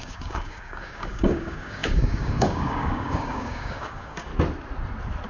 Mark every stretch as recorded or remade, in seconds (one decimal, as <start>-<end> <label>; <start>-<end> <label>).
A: 0.0-4.3 remade; 4.3-5.3 recorded